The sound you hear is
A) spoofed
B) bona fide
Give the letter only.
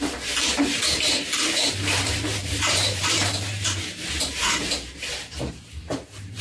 A